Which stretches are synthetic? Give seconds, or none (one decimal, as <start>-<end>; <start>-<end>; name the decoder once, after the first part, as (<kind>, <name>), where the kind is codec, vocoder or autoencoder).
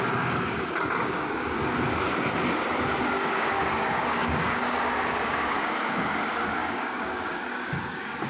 0.0-2.1 (codec, DAC); 3.0-8.3